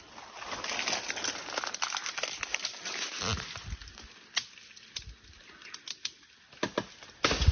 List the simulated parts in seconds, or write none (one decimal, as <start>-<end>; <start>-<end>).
none